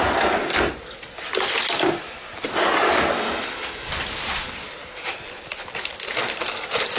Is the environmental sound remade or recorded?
recorded